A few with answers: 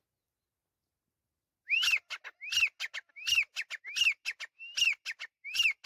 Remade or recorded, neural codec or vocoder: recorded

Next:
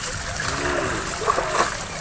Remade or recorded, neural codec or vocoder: recorded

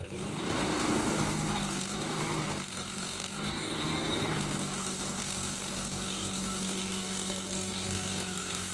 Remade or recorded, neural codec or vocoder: remade, codec, DAC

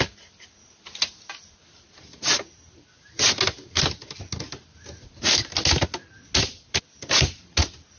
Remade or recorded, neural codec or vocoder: recorded